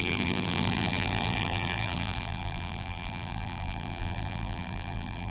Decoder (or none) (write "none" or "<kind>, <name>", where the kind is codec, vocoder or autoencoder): vocoder, BigVGAN v2